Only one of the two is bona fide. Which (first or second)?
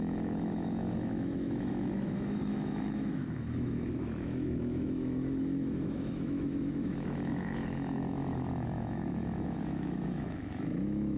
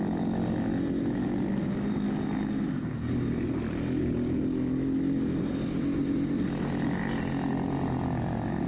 second